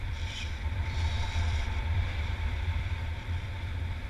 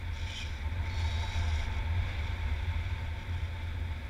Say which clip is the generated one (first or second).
first